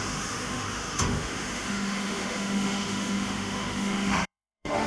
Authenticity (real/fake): fake